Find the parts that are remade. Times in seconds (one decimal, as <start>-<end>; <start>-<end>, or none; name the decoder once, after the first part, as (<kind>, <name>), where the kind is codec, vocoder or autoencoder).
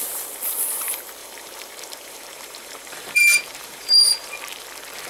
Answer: 1.2-4.3 (vocoder, BigVGAN v2)